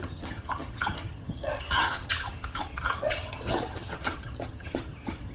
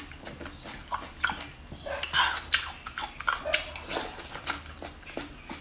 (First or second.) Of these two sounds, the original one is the second